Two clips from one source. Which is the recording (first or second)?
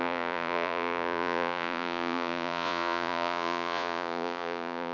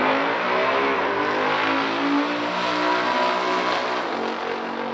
second